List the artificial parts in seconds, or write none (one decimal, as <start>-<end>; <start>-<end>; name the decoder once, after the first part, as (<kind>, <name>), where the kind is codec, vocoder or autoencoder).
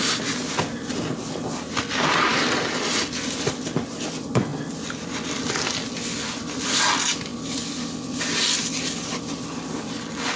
4.5-5.5 (vocoder, BigVGAN v2)